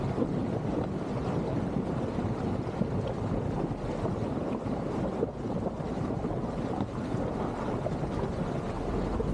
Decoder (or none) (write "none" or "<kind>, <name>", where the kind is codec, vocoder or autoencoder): none